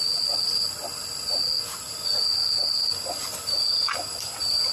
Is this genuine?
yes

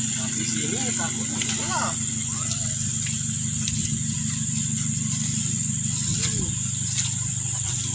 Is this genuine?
yes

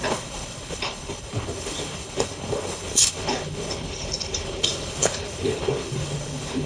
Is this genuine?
no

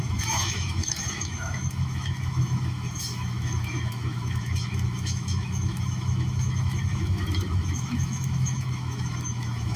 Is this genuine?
no